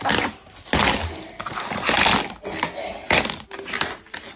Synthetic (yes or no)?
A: no